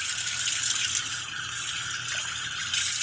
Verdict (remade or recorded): recorded